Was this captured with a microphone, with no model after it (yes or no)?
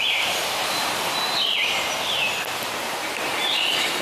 no